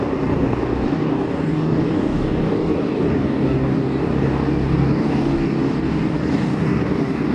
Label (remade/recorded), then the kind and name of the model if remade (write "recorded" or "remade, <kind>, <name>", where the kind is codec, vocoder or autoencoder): remade, codec, DAC